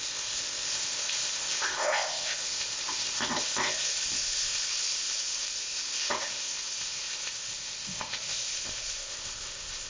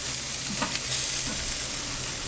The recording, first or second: second